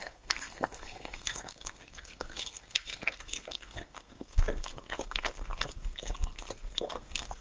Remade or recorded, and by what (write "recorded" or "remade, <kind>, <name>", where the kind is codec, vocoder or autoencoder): remade, codec, SNAC